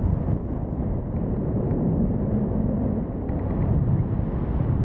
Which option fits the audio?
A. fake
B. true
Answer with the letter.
B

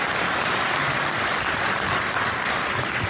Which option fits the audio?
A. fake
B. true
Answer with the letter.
A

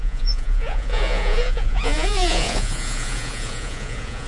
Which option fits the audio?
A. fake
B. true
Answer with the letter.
A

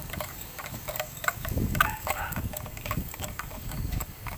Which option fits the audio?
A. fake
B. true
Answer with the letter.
A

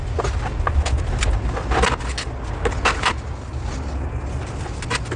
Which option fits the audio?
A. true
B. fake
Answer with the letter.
A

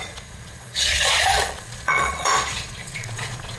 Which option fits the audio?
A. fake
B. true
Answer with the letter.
A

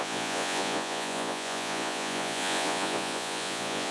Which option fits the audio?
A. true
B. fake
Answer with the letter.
B